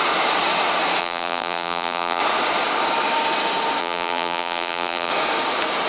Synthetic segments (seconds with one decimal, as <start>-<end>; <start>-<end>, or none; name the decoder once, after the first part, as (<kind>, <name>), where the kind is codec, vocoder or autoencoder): 1.0-2.2 (vocoder, BigVGAN v2); 3.8-5.1